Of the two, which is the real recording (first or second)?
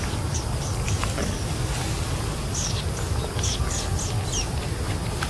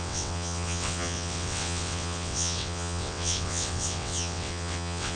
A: first